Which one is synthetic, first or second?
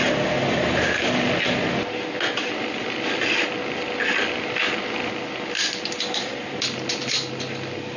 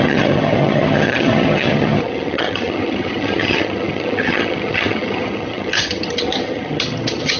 second